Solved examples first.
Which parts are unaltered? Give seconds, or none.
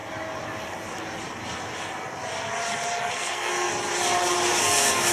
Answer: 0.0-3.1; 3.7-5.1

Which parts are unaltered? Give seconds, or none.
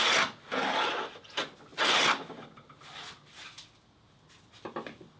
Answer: 0.0-5.2